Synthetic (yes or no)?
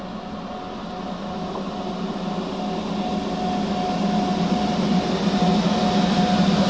no